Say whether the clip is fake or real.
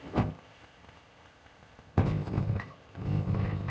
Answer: fake